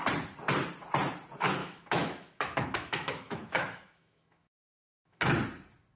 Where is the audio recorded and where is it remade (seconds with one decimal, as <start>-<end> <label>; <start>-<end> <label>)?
0.0-1.6 recorded; 1.6-5.2 remade; 5.2-6.0 recorded